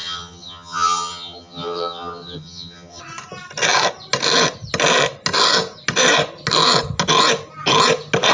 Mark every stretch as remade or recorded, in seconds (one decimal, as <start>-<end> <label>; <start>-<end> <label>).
0.0-3.0 remade; 3.0-8.3 recorded